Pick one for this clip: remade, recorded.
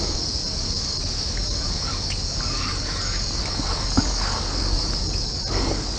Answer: remade